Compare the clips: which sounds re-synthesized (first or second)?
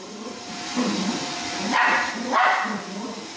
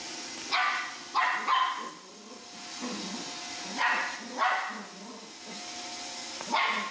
first